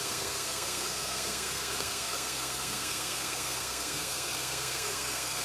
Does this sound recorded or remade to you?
remade